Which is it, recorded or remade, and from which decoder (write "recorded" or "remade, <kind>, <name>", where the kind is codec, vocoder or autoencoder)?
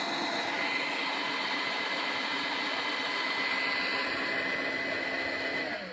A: recorded